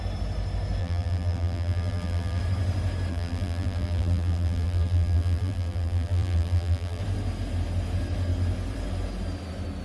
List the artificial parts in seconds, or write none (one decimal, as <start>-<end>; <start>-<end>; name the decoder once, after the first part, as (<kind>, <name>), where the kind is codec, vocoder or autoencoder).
0.8-2.4 (vocoder, BigVGAN v2); 3.1-7.0